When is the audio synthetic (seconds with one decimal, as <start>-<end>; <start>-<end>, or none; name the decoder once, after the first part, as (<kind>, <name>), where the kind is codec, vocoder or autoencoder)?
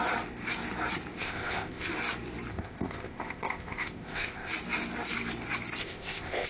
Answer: 1.2-1.9 (codec, ZipCodec); 2.5-4.5; 5.8-6.5